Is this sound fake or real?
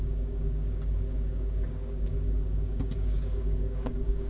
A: fake